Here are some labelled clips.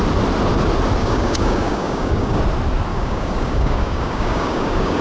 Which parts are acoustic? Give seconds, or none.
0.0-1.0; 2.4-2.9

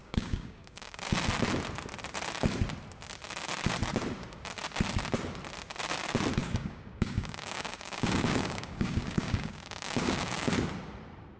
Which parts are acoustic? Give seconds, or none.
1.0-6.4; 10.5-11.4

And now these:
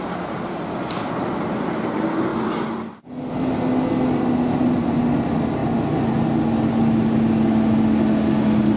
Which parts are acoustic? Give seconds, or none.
0.0-8.8

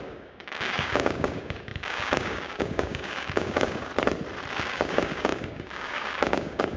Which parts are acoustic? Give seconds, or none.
3.9-4.5